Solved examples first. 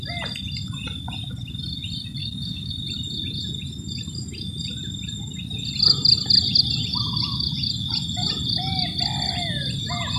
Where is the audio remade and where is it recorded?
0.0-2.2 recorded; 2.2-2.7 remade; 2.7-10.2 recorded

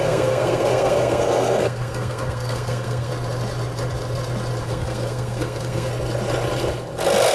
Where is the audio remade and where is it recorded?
0.0-3.1 remade; 3.1-4.6 recorded; 4.6-5.9 remade; 5.9-7.3 recorded